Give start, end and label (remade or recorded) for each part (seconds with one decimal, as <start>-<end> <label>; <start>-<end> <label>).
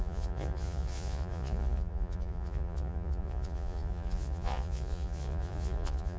0.0-6.2 remade